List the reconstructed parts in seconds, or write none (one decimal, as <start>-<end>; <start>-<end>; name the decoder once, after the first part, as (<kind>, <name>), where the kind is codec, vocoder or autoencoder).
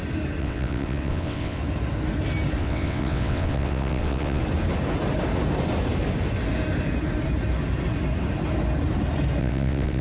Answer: 0.4-1.6 (vocoder, WaveNeXt); 2.6-4.4; 9.4-10.0